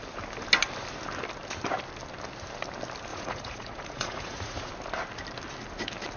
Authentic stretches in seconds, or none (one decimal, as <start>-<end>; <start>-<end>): 0.0-3.1; 4.7-6.2